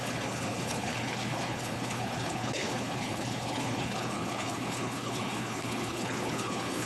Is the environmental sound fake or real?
fake